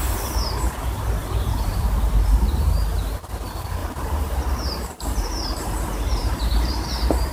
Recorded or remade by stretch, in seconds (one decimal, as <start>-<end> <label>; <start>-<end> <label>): 0.0-1.2 recorded; 1.2-2.7 remade; 2.7-3.8 recorded; 3.8-6.7 remade; 6.7-7.3 recorded